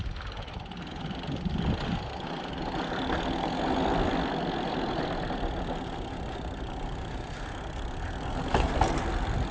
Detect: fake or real real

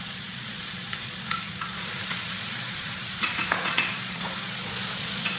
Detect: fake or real fake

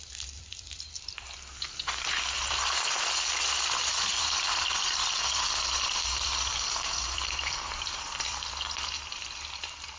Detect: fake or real fake